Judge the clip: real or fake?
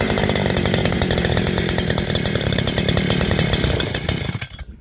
fake